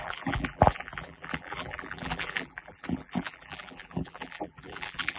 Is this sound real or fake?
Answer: fake